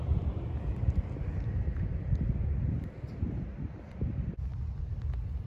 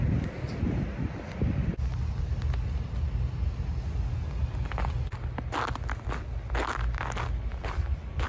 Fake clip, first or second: first